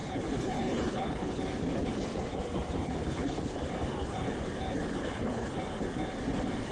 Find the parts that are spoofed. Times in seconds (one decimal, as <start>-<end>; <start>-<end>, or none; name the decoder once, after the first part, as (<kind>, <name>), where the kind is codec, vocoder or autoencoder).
0.0-1.4 (codec, HILCodec); 2.8-3.4; 5.0-5.6

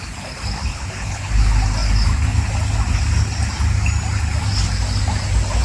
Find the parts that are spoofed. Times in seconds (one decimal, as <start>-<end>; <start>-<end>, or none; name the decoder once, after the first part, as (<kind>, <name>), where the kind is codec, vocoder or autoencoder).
0.7-1.3 (codec, HILCodec)

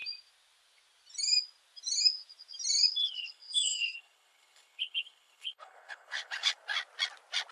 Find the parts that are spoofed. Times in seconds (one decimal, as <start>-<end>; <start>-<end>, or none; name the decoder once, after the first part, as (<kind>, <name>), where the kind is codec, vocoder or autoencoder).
3.0-6.6 (codec, HILCodec)

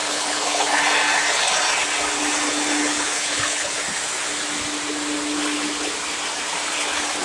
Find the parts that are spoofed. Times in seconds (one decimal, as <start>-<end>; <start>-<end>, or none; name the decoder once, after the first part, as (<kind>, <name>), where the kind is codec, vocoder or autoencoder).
0.0-0.8 (codec, HILCodec); 2.9-3.8

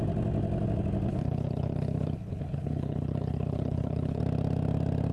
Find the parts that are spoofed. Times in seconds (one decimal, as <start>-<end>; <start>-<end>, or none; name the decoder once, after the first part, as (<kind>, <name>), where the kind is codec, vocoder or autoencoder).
1.1-4.2 (codec, HILCodec)

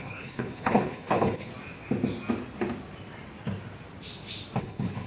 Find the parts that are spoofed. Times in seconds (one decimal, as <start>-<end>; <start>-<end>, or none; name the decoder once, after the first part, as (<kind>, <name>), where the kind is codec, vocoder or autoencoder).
0.0-1.5 (codec, HILCodec); 4.6-5.1

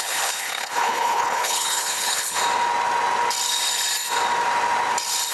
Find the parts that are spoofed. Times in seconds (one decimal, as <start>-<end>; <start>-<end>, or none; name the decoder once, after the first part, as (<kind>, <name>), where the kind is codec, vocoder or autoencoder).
0.0-2.4 (codec, HILCodec)